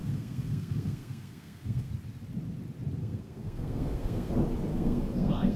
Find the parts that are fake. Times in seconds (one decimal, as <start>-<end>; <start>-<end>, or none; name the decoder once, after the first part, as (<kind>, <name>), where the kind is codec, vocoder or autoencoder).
0.0-1.9 (codec, SNAC); 3.0-4.3; 4.7-5.6